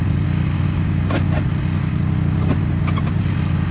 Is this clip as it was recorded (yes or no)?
yes